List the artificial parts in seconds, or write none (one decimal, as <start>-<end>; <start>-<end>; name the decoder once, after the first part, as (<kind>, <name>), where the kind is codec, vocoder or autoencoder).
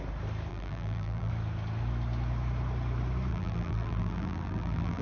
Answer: 0.5-1.3 (vocoder, BigVGAN v2); 3.3-5.0